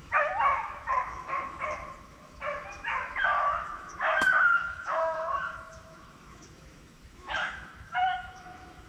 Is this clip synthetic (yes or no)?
yes